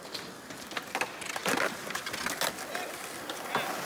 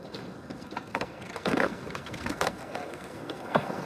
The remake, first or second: second